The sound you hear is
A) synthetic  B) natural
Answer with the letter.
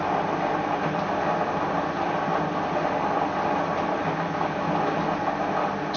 B